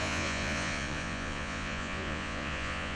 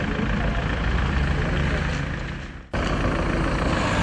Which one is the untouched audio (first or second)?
second